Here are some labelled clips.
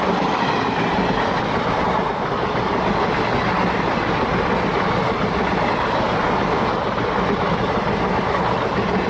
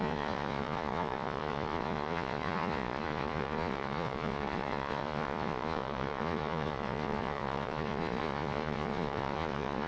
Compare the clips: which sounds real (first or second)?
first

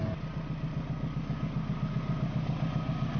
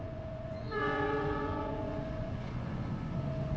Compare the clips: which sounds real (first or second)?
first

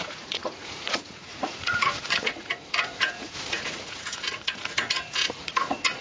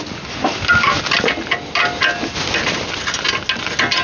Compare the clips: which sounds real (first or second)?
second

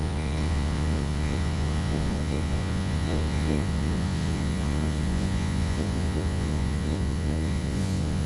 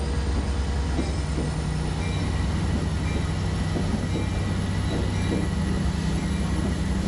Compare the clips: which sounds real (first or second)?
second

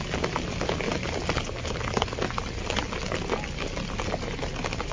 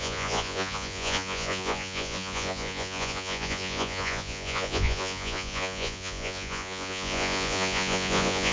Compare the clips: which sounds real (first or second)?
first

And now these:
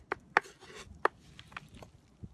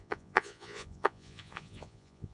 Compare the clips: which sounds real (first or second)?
first